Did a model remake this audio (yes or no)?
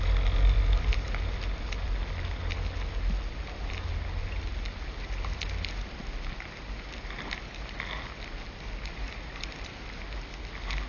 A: no